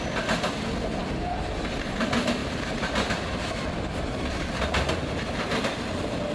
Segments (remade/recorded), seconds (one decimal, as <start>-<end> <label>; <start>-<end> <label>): 0.0-6.3 recorded